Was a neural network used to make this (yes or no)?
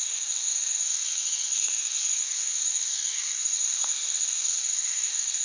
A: yes